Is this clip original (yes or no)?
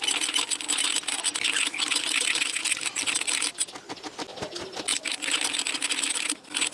yes